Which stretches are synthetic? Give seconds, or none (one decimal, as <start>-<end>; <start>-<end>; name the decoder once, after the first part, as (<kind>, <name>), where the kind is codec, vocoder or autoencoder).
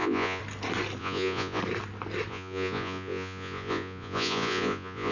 0.0-0.4 (vocoder, Vocos); 1.0-1.6; 2.3-5.1